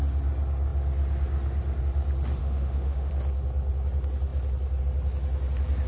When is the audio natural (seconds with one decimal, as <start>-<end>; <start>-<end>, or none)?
0.0-2.4; 3.1-5.9